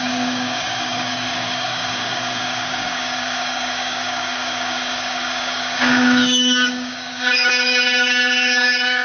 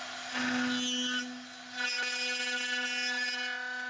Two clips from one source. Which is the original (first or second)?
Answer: second